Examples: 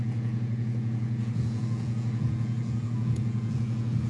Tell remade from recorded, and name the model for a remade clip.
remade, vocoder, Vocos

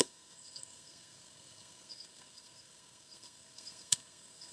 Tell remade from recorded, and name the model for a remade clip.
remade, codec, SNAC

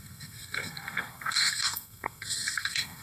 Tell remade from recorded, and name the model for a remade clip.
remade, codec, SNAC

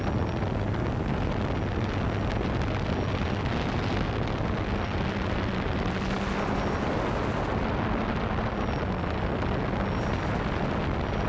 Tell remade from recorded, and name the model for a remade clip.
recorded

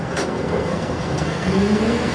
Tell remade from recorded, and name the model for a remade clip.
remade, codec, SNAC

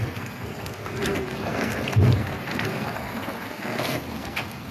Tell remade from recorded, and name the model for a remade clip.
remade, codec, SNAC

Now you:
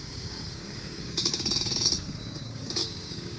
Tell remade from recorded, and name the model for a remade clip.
remade, codec, DAC